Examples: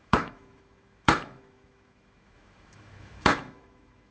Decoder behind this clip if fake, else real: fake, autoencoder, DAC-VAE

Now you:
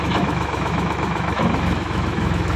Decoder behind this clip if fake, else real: fake, autoencoder, DAC-VAE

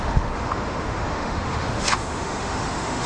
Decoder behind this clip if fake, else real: fake, autoencoder, DAC-VAE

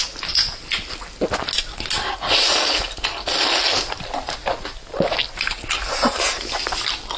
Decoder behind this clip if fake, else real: real